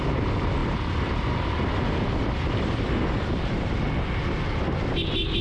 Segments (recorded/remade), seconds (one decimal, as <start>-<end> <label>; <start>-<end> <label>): 0.0-5.4 recorded